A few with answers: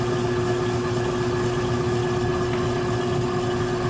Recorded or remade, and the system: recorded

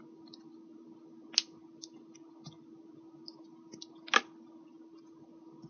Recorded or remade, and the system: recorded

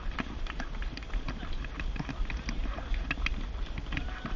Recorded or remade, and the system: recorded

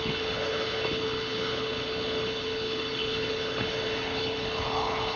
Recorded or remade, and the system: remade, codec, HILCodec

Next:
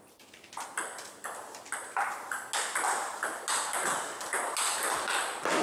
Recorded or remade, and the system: recorded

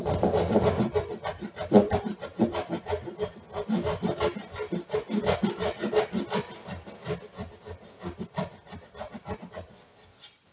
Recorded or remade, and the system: recorded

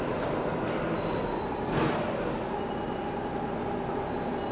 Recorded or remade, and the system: recorded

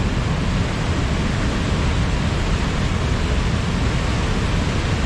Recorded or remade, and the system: recorded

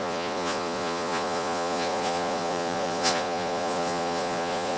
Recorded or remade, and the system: remade, vocoder, Vocos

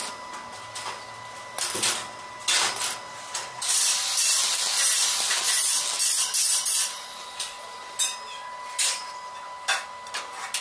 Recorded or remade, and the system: recorded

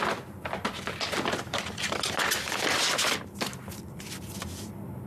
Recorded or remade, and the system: recorded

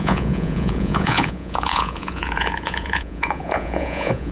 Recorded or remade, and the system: remade, vocoder, Vocos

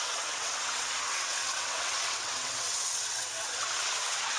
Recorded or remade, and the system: remade, vocoder, WaveNeXt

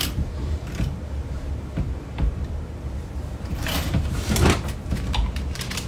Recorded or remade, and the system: remade, vocoder, BigVGAN v2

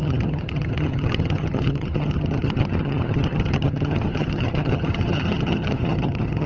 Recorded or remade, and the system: remade, vocoder, HiFi-GAN